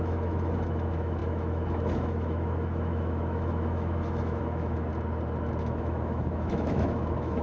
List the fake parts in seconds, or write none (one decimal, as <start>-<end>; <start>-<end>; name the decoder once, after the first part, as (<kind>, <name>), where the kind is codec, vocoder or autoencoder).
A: 0.0-4.9 (autoencoder, DAC-VAE); 5.6-7.4